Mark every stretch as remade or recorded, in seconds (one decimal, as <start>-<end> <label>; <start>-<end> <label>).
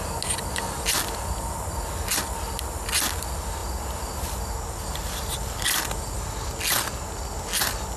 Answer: 0.0-8.0 recorded